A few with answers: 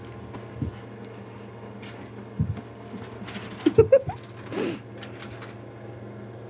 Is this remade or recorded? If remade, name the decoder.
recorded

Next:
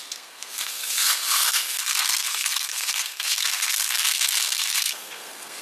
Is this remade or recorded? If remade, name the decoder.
remade, codec, SNAC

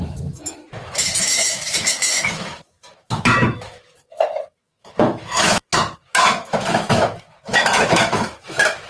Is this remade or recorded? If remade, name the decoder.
remade, autoencoder, DAC-VAE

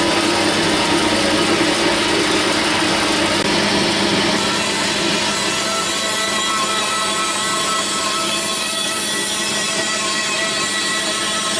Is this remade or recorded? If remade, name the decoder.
recorded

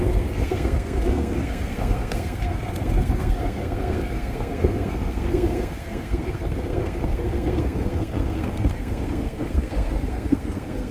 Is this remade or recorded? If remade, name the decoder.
remade, codec, SNAC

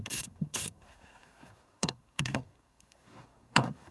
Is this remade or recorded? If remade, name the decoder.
remade, codec, SNAC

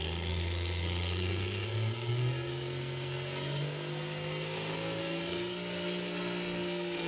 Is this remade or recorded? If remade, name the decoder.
remade, codec, SNAC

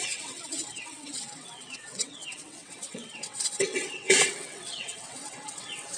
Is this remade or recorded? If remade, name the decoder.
remade, vocoder, WaveNeXt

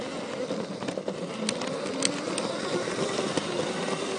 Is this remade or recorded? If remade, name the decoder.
recorded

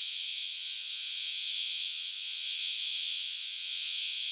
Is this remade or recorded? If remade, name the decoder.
remade, vocoder, Vocos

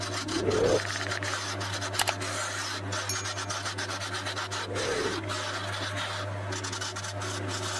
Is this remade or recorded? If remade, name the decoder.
recorded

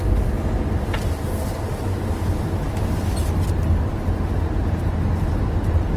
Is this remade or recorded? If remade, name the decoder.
recorded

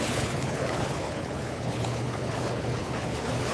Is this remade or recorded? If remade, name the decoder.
remade, codec, HILCodec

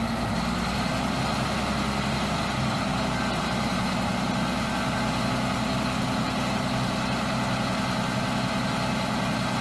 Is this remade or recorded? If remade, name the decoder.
recorded